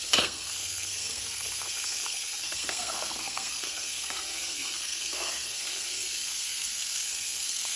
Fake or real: fake